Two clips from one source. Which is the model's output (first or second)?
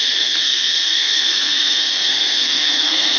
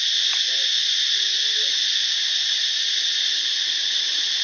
first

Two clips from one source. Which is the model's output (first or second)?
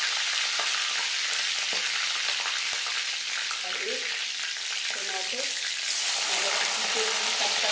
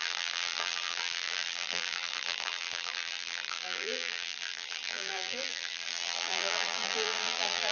second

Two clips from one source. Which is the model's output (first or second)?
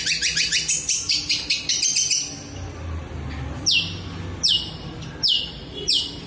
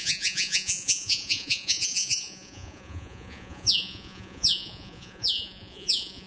second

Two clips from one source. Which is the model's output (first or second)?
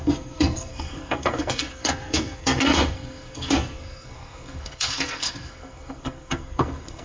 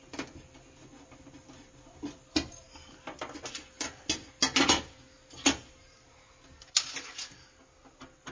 first